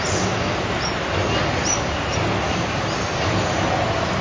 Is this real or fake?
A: real